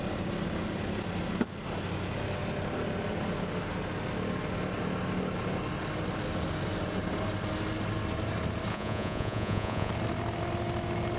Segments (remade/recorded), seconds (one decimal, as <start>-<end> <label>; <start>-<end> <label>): 0.0-8.7 recorded; 8.7-9.9 remade; 9.9-11.2 recorded